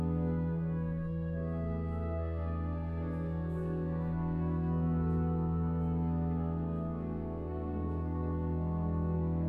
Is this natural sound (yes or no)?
no